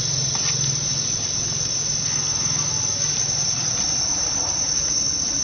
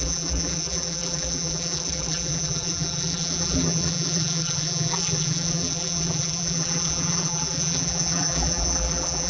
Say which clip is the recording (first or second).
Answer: first